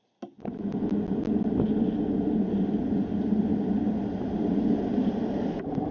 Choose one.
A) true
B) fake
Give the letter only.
A